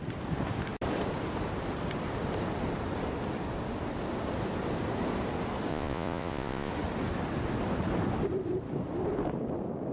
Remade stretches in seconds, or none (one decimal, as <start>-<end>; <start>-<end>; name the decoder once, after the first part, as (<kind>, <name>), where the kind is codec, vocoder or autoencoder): 5.7-6.7 (vocoder, Vocos)

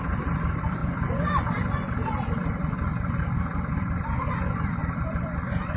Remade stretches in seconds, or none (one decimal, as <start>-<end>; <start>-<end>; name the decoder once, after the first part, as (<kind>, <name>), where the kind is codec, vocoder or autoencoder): none